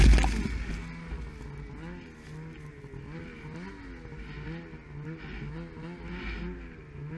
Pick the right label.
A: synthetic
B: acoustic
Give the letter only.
B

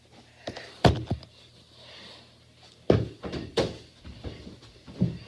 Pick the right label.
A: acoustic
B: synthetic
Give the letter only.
A